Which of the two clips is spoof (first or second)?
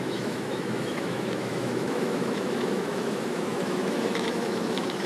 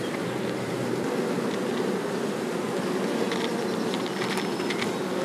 first